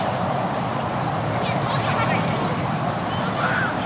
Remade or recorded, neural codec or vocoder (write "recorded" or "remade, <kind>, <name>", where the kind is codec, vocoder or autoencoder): recorded